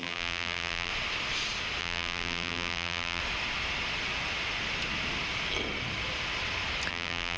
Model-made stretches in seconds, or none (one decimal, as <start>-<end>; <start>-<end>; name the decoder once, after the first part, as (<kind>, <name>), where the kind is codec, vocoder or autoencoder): 0.0-0.9 (vocoder, BigVGAN v2); 1.8-3.2; 6.9-7.4